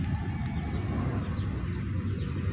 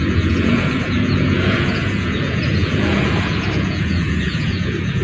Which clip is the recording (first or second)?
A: first